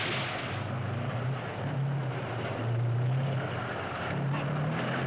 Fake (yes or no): no